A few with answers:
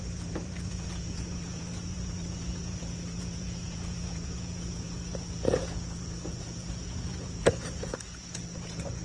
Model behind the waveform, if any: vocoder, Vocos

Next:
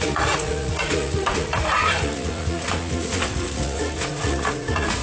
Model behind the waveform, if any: vocoder, Vocos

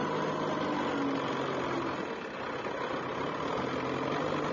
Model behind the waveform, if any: none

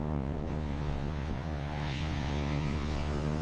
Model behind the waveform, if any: vocoder, Vocos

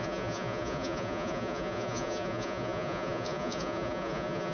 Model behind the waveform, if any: vocoder, Vocos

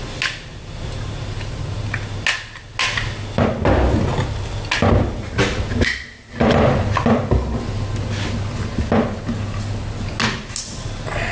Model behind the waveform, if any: none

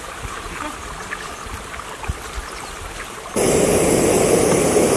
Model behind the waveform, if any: none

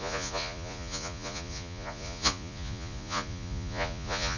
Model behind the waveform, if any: vocoder, Vocos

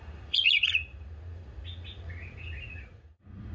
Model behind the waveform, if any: vocoder, Vocos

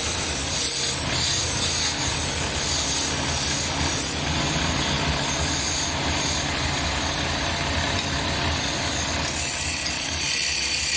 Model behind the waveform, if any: none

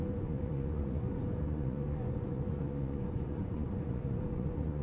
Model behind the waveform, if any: vocoder, Vocos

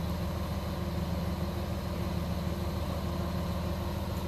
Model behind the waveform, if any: none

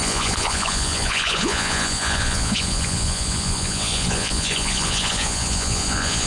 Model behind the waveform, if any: vocoder, Vocos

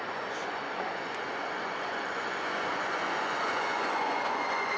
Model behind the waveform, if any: vocoder, Vocos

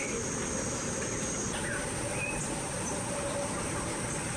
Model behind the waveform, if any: none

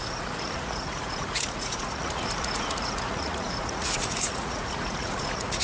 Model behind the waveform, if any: vocoder, Vocos